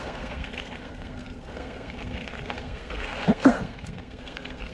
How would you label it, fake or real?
fake